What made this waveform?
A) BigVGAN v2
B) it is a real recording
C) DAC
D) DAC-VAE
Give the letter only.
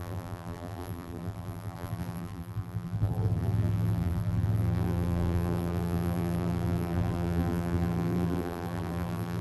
A